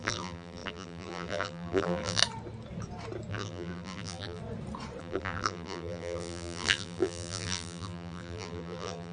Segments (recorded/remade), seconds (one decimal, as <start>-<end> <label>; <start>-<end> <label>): 0.0-2.2 remade; 2.2-3.3 recorded; 3.3-4.4 remade; 4.4-5.0 recorded; 5.0-9.1 remade